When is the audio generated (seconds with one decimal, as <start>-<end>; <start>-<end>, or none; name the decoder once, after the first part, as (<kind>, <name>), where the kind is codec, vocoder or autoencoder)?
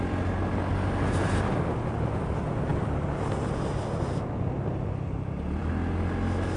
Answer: none